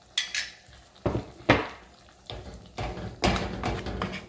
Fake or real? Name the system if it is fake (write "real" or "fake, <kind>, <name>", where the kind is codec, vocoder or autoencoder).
real